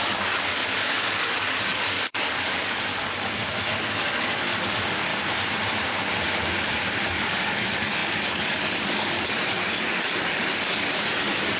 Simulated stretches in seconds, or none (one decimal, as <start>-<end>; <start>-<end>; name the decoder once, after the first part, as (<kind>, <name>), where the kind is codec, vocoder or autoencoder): 0.0-2.9 (codec, DAC); 3.8-5.1; 7.1-11.6